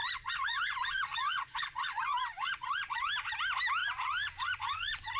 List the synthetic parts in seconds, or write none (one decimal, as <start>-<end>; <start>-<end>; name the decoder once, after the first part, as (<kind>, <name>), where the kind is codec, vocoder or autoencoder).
0.0-3.1 (vocoder, Vocos); 3.8-5.2